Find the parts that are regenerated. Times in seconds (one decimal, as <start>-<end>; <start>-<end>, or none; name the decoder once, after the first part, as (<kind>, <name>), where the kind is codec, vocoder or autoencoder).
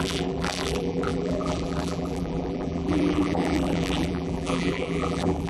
0.0-5.5 (vocoder, BigVGAN v2)